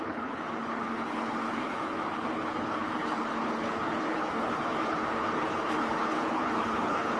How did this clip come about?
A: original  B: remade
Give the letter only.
B